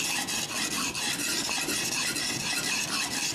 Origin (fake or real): real